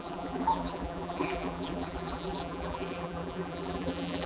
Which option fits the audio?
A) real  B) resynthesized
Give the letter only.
B